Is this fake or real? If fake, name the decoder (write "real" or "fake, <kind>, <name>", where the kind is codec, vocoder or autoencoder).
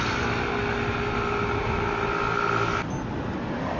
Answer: real